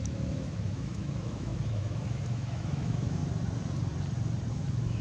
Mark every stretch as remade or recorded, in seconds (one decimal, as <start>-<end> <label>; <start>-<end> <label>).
0.0-3.2 remade; 3.2-4.5 recorded; 4.5-5.0 remade